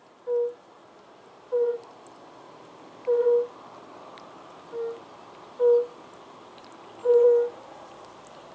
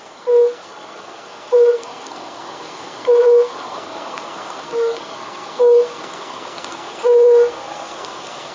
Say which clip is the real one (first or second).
first